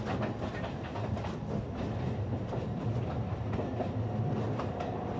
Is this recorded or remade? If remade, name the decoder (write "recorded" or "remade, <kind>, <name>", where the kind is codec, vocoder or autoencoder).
recorded